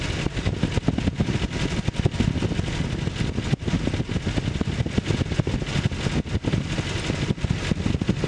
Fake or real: real